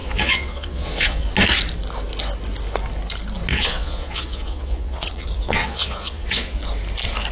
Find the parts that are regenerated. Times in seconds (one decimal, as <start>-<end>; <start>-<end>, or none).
0.0-1.3; 3.5-6.6